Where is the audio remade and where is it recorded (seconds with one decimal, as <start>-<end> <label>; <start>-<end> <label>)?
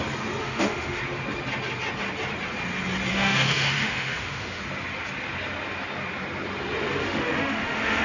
0.0-0.4 recorded; 0.4-1.0 remade; 1.0-3.1 recorded; 3.1-4.6 remade; 4.6-7.0 recorded; 7.0-8.0 remade